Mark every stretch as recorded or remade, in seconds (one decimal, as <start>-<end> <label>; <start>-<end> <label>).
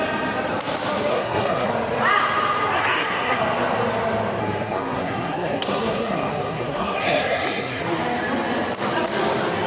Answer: 0.0-1.1 recorded; 1.1-1.7 remade; 1.7-2.8 recorded; 2.8-3.4 remade; 3.4-4.4 recorded; 4.4-7.8 remade; 7.8-9.7 recorded